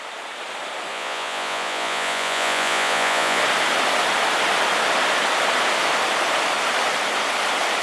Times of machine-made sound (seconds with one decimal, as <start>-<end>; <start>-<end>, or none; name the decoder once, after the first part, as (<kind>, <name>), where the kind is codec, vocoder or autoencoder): 0.9-3.4 (vocoder, Vocos)